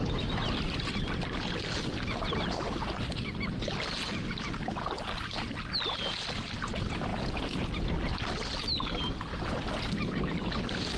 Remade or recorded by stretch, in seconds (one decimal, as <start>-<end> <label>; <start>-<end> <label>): 0.0-11.0 recorded